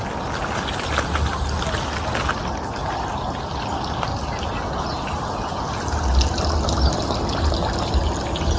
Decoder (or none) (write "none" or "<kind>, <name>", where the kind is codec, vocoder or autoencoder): none